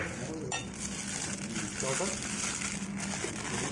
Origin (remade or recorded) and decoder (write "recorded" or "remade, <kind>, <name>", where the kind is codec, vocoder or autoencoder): recorded